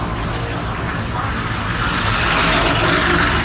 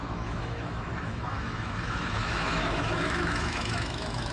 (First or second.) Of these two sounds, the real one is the first